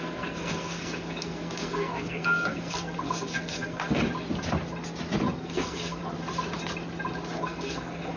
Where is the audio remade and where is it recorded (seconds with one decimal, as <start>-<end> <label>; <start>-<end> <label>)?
0.0-4.0 remade; 4.0-5.4 recorded; 5.4-6.0 remade; 6.0-7.4 recorded; 7.4-8.2 remade